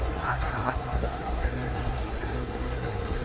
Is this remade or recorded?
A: remade